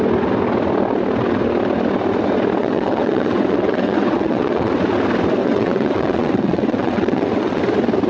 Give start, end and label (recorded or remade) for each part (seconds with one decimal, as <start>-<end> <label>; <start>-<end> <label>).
0.0-2.6 recorded; 2.6-4.7 remade; 4.7-5.4 recorded; 5.4-7.6 remade; 7.6-8.1 recorded